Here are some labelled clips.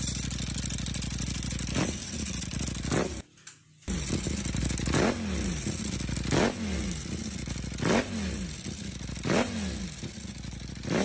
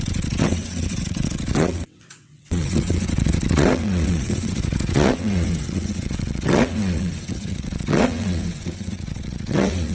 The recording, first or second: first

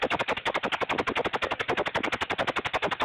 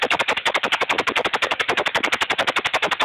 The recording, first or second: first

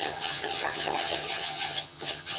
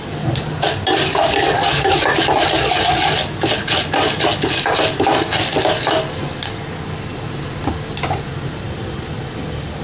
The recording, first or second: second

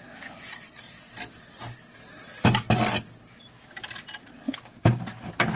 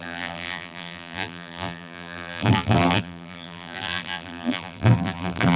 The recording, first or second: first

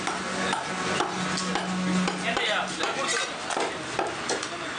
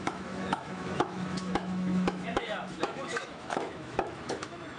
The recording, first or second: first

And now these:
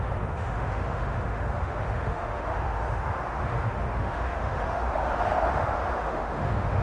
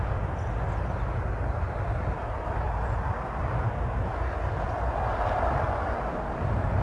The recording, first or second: second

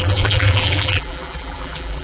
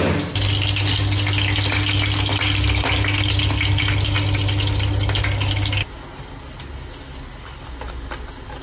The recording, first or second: second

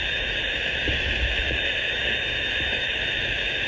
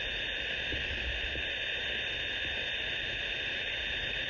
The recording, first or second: second